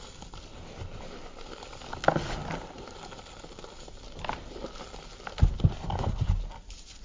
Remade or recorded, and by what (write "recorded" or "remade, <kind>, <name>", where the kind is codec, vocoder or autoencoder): recorded